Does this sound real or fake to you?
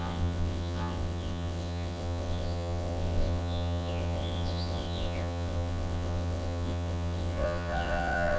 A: fake